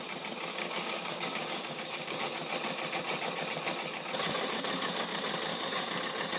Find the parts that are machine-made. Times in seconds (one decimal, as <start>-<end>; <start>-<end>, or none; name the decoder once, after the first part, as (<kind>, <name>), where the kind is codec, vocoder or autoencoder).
0.5-2.2 (codec, DAC); 5.5-6.0